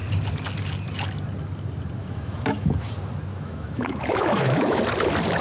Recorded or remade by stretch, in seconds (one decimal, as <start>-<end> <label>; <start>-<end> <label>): 0.0-2.0 recorded; 2.0-2.7 remade; 2.7-3.3 recorded; 3.3-4.8 remade; 4.8-5.4 recorded

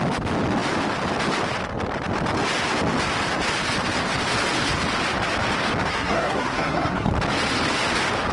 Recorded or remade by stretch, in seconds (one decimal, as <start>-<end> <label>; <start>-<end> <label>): 0.0-5.9 recorded; 5.9-7.1 remade; 7.1-8.3 recorded

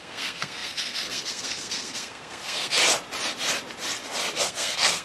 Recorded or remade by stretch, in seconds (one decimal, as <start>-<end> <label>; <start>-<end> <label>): 0.0-2.8 remade; 2.8-4.4 recorded; 4.4-5.0 remade

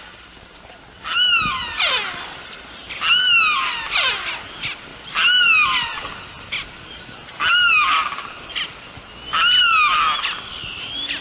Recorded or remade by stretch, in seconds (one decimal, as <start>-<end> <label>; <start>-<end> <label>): 0.0-11.2 recorded

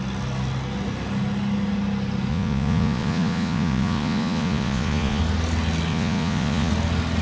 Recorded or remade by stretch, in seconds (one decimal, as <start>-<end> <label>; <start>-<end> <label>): 0.0-2.3 recorded; 2.3-5.2 remade; 5.2-5.9 recorded; 5.9-6.7 remade; 6.7-7.2 recorded